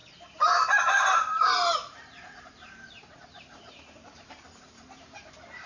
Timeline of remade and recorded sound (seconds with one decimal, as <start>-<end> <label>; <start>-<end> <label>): 0.0-5.7 remade